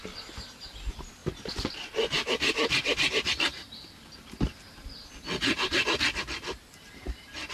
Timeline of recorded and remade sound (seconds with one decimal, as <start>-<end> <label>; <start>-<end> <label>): 0.0-7.5 recorded

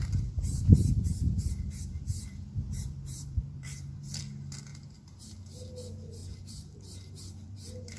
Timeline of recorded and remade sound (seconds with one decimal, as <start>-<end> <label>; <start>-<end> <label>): 0.0-4.2 remade; 4.2-6.2 recorded; 6.2-8.0 remade

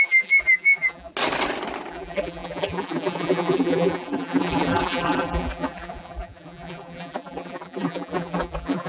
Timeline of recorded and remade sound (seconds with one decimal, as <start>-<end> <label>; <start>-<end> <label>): 0.0-1.1 remade; 1.1-1.9 recorded; 1.9-8.9 remade

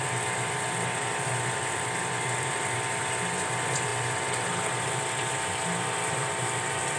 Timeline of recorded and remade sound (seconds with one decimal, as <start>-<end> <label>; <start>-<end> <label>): 0.0-7.0 recorded

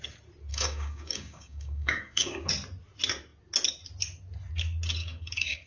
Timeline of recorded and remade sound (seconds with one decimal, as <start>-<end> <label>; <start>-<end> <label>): 0.0-0.5 recorded; 0.5-2.5 remade; 2.5-5.0 recorded; 5.0-5.7 remade

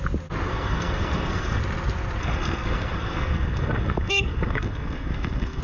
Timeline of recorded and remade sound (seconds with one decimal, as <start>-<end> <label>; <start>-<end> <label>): 0.0-0.5 recorded; 0.5-1.6 remade; 1.6-2.2 recorded; 2.2-5.6 remade